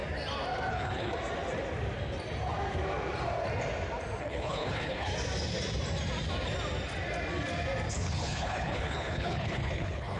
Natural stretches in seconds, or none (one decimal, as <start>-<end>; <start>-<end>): 0.0-0.7; 1.1-4.2; 5.1-7.9